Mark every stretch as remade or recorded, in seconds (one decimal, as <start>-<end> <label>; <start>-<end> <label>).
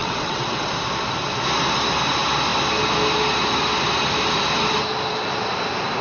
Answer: 0.0-0.7 remade; 0.7-6.0 recorded